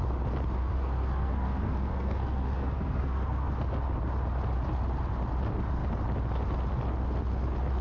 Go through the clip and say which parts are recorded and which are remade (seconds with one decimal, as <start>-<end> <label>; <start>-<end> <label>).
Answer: 0.0-0.6 recorded; 0.6-3.5 remade; 3.5-7.8 recorded